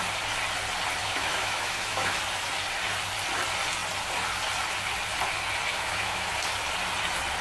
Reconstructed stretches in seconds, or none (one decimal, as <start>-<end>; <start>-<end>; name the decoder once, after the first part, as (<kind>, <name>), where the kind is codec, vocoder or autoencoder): 1.0-2.2 (autoencoder, DAC-VAE); 5.7-6.3